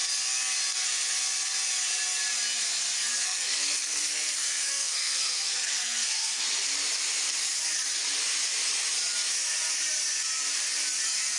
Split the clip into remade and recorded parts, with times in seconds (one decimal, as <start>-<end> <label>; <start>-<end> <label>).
0.0-3.1 recorded; 3.1-6.4 remade; 6.4-11.4 recorded